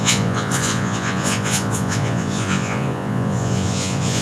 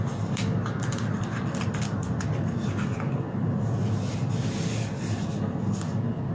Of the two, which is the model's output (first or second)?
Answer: first